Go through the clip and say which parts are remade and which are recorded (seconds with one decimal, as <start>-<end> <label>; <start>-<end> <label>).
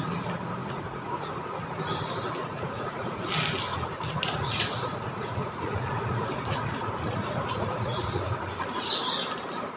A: 0.0-0.6 recorded; 0.6-1.3 remade; 1.3-2.4 recorded; 2.4-3.3 remade; 3.3-3.7 recorded; 3.7-8.9 remade; 8.9-9.8 recorded